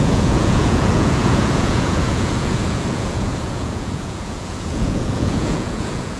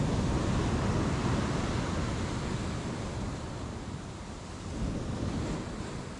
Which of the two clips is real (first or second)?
second